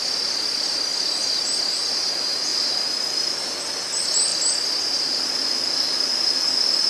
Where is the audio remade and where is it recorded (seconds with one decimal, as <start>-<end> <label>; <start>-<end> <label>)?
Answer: 0.0-0.9 recorded; 0.9-1.7 remade; 1.7-2.5 recorded; 2.5-3.6 remade; 3.6-4.3 recorded; 4.3-5.6 remade; 5.6-6.9 recorded